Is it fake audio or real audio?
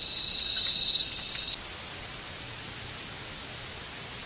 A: real